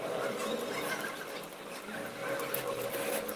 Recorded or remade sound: recorded